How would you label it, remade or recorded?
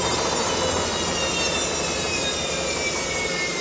recorded